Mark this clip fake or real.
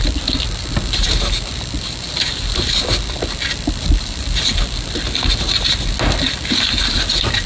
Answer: real